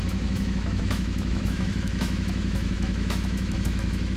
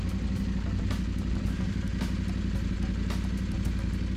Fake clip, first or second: first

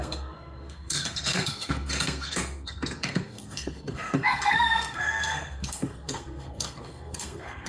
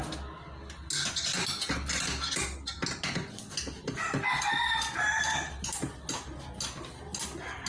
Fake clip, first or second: first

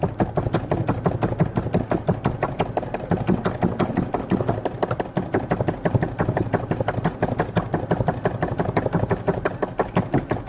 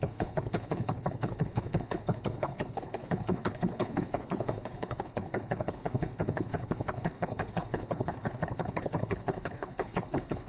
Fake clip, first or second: second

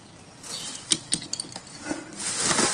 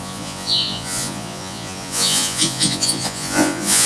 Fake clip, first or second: second